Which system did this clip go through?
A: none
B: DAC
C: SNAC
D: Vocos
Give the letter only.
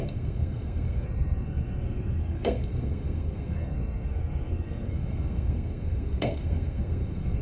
C